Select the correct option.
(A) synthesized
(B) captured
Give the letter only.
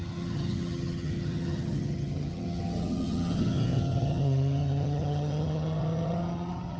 A